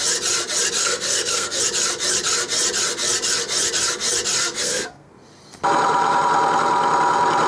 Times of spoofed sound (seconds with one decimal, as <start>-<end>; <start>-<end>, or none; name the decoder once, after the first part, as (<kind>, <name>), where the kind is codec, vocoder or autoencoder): 0.8-1.6 (codec, SNAC); 4.4-5.1